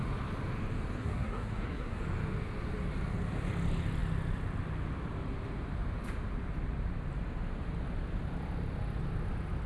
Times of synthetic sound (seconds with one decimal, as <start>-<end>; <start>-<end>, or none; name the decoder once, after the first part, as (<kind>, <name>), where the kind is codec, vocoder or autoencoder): 1.0-2.0 (codec, SNAC)